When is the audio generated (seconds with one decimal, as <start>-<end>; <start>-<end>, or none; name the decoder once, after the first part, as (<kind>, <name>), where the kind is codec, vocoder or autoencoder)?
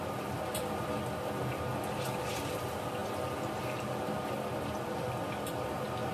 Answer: none